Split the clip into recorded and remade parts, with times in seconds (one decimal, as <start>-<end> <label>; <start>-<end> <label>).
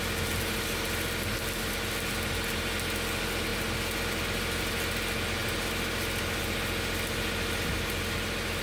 0.0-8.6 recorded